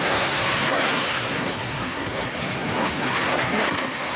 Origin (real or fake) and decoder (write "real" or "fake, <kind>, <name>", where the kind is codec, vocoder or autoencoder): fake, codec, SNAC